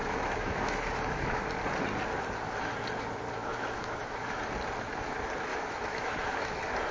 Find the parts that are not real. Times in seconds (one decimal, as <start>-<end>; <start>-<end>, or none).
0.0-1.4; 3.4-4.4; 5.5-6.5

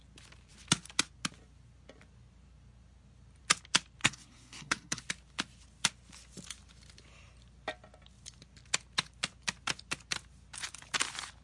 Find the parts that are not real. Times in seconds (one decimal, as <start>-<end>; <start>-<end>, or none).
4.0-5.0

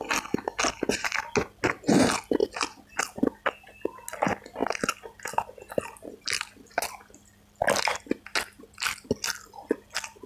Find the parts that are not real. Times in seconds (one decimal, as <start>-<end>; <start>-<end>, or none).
none

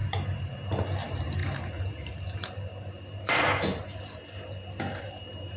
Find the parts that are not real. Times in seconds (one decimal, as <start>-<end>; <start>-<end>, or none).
0.0-5.6

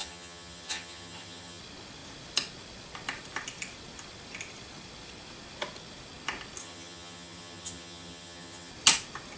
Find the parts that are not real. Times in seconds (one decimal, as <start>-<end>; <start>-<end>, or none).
0.0-1.6; 6.6-8.7

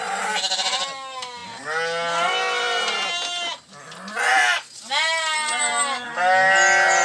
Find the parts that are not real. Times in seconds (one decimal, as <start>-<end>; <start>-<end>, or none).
none

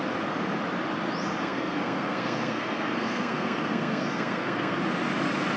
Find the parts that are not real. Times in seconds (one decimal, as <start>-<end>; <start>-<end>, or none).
1.4-4.8